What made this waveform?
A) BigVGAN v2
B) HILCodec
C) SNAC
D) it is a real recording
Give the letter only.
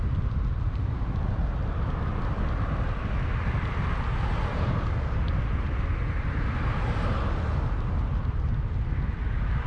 D